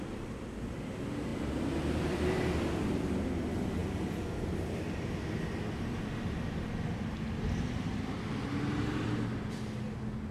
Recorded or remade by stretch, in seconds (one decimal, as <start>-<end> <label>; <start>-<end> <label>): 0.0-10.3 recorded